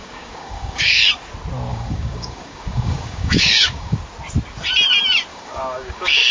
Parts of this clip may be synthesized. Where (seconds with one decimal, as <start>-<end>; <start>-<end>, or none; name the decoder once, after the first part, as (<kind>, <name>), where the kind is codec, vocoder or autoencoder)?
0.0-1.0 (codec, DAC); 1.7-4.0; 5.3-6.3